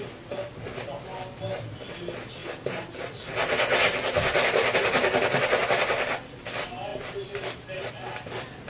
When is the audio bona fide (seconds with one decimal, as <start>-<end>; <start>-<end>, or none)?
0.0-6.9; 7.9-8.7